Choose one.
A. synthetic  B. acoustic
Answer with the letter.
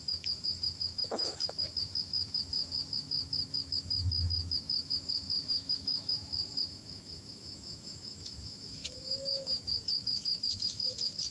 A